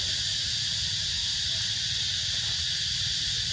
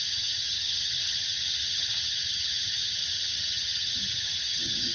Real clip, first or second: first